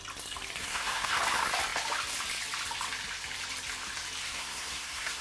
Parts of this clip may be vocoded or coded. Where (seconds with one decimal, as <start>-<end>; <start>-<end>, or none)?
0.6-1.2; 4.2-5.2